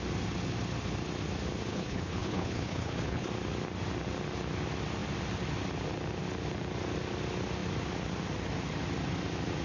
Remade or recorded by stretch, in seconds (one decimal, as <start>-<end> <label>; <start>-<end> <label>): 0.0-1.7 recorded; 1.7-3.3 remade; 3.3-9.6 recorded